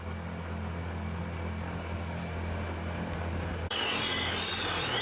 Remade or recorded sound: recorded